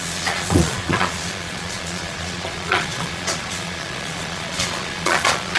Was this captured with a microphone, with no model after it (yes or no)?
no